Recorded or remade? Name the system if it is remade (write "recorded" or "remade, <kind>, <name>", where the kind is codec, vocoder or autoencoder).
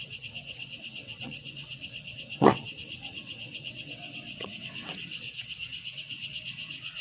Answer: remade, vocoder, WaveNeXt